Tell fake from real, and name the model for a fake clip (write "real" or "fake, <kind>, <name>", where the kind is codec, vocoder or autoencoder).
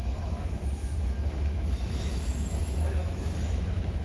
fake, autoencoder, DAC-VAE